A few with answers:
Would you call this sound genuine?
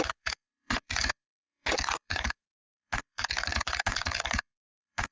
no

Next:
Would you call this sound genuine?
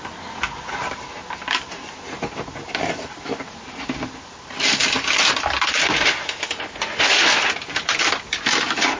yes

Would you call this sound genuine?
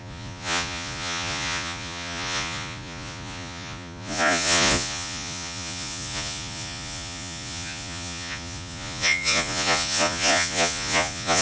no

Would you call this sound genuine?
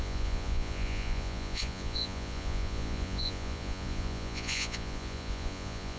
no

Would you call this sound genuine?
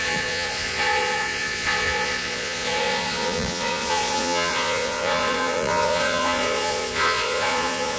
no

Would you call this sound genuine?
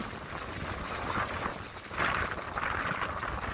yes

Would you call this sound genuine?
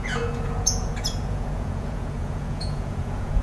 no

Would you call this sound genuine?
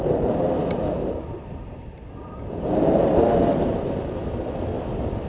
yes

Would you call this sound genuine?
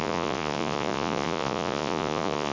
no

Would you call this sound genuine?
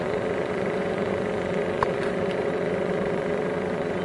no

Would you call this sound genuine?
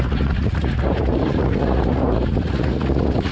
no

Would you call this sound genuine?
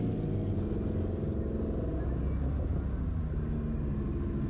yes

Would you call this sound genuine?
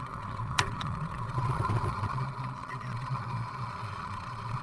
no